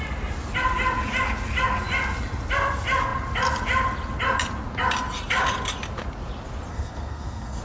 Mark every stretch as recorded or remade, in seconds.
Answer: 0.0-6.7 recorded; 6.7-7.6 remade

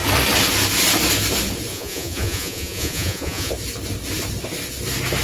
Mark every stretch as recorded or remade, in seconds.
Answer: 0.0-1.7 recorded; 1.7-3.5 remade; 3.5-5.2 recorded

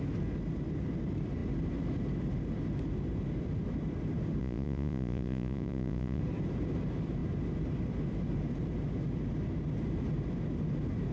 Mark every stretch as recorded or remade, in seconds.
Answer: 0.0-4.4 recorded; 4.4-6.2 remade; 6.2-11.1 recorded

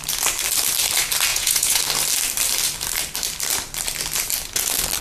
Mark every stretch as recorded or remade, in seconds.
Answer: 0.0-1.3 recorded; 1.3-1.8 remade; 1.8-5.0 recorded

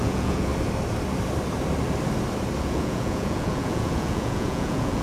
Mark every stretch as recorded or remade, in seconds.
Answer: 0.0-0.5 remade; 0.5-2.6 recorded; 2.6-5.0 remade

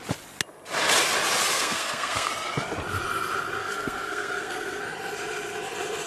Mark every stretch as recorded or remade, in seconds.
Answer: 0.0-1.5 recorded; 1.5-2.3 remade; 2.3-3.6 recorded; 3.6-4.8 remade; 4.8-6.1 recorded

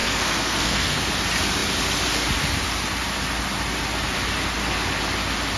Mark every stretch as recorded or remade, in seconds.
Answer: 0.0-1.1 remade; 1.1-5.6 recorded

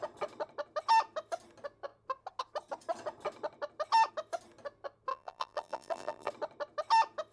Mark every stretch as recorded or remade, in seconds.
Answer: 0.0-5.1 recorded; 5.1-6.3 remade; 6.3-7.3 recorded